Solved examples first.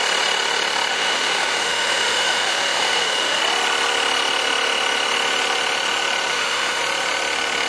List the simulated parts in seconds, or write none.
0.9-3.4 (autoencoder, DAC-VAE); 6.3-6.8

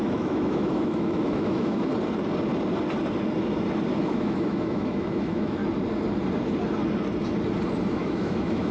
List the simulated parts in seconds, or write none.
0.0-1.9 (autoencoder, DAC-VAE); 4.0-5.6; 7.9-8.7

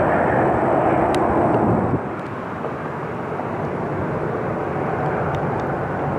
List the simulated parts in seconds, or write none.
none